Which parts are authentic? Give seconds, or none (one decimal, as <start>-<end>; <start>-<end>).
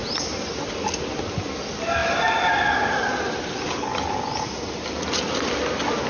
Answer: 0.0-6.1